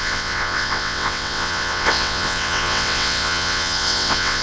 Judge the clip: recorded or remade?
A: remade